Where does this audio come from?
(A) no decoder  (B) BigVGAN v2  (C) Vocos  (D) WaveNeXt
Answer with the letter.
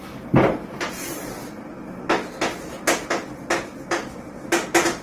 A